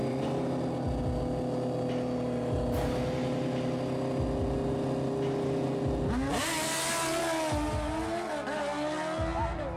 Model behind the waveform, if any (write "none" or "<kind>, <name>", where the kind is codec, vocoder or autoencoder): none